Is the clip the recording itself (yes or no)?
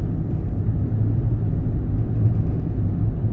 yes